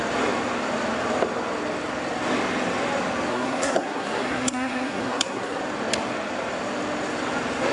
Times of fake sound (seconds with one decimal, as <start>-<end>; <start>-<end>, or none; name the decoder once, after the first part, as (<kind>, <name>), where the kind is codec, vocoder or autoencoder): 3.3-5.6 (codec, SNAC)